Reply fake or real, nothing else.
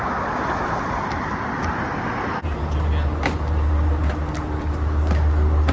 real